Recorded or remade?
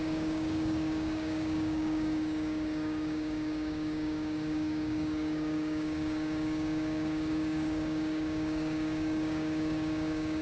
remade